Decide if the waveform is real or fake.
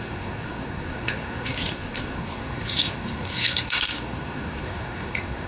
fake